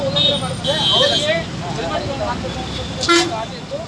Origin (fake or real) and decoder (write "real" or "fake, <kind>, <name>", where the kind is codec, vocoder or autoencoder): real